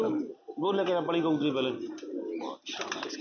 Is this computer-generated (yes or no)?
no